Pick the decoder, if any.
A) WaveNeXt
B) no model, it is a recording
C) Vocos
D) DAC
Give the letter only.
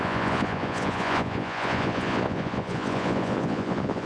C